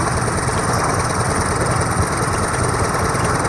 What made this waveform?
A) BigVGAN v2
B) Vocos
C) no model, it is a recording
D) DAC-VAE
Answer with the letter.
A